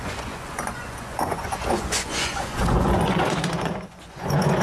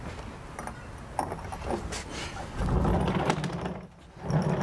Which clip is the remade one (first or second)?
first